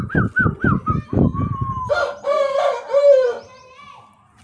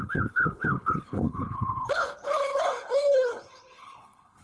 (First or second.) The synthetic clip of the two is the second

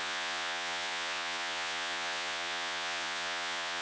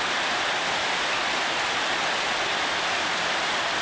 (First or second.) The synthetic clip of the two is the first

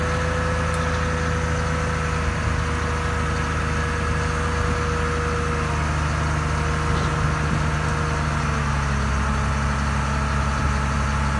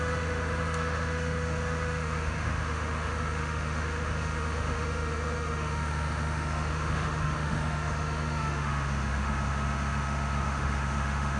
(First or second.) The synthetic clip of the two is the second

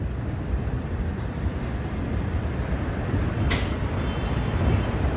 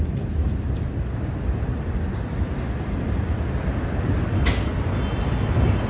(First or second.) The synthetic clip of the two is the first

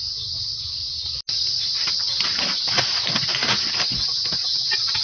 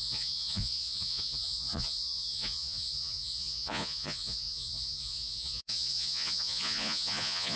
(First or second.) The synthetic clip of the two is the second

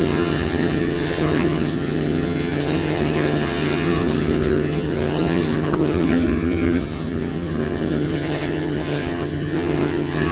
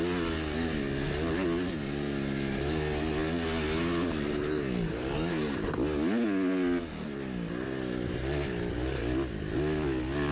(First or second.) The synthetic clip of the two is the first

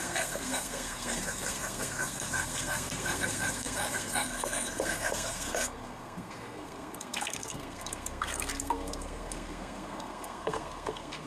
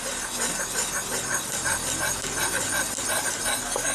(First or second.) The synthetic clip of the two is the first